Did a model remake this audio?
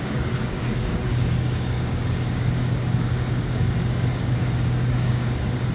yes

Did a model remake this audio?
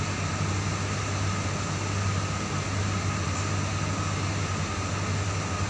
no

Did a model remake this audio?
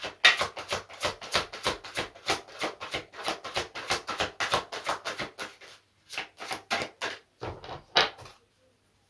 no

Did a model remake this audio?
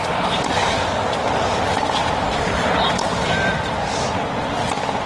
no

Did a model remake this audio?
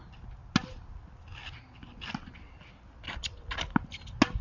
no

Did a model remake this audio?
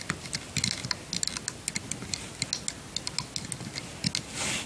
no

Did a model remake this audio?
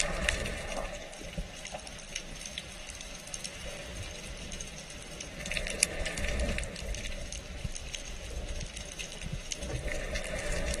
yes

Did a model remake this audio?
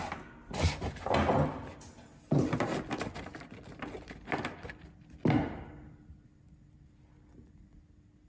no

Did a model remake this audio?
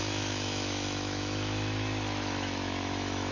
yes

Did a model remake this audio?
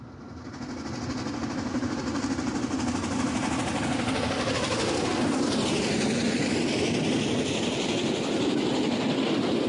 no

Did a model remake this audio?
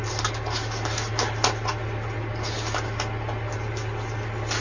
no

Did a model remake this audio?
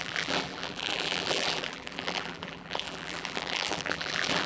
yes